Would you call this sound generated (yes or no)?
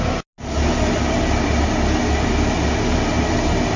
no